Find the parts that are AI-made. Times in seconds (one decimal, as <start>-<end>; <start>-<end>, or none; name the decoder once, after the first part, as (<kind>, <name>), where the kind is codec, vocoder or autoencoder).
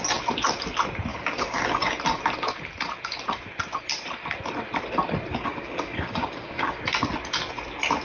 1.1-2.0 (codec, DAC); 5.3-6.8